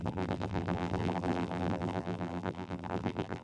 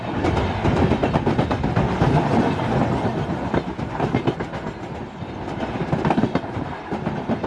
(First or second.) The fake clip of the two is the first